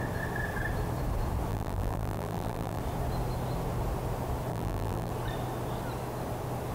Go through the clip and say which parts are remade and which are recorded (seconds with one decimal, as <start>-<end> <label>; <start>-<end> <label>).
0.0-1.5 recorded; 1.5-2.8 remade; 2.8-4.5 recorded; 4.5-5.1 remade; 5.1-6.7 recorded

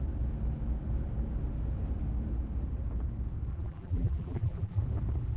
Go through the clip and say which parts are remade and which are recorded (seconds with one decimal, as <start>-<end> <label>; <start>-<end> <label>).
0.0-3.5 recorded; 3.5-4.8 remade; 4.8-5.4 recorded

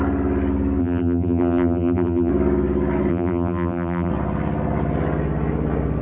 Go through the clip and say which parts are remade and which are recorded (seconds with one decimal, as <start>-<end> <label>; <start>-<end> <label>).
0.0-0.8 recorded; 0.8-2.3 remade; 2.3-3.1 recorded; 3.1-4.1 remade; 4.1-6.0 recorded

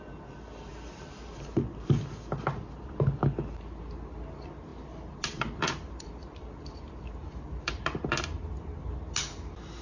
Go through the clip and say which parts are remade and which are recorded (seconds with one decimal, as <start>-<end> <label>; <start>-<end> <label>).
0.0-4.7 recorded; 4.7-7.8 remade; 7.8-9.8 recorded

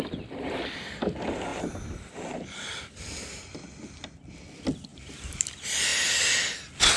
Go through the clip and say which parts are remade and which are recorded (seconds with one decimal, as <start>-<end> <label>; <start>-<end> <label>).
0.0-1.5 recorded; 1.5-3.4 remade; 3.4-4.9 recorded; 4.9-5.5 remade; 5.5-7.0 recorded